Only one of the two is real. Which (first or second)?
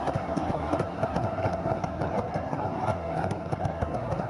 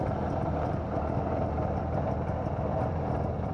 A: second